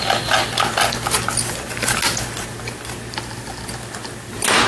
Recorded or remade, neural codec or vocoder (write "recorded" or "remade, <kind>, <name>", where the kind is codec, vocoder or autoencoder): recorded